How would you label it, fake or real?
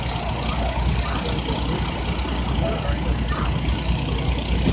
real